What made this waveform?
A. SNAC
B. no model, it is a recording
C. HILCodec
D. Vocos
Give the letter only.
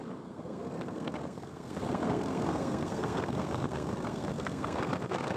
A